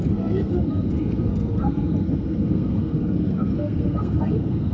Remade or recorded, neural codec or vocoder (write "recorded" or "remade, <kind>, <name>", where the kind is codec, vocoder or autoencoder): remade, codec, SNAC